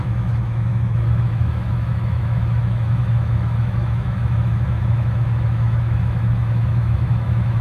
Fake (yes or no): yes